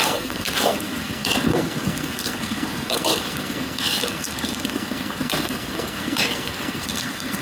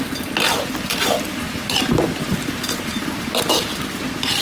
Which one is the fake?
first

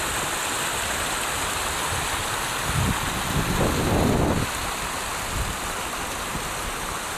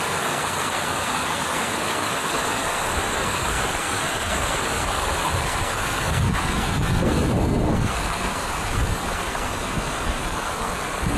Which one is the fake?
second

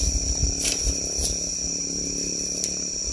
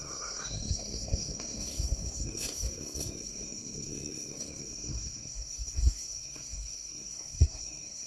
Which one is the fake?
second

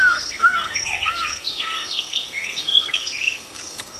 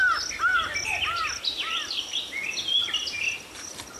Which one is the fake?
first